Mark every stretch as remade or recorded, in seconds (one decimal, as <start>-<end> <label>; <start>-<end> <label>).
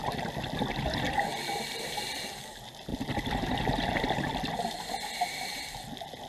0.0-6.3 recorded